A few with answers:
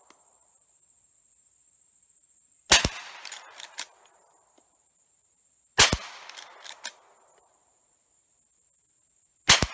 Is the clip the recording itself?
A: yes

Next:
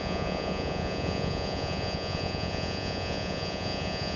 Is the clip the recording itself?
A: no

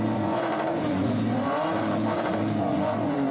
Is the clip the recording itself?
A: no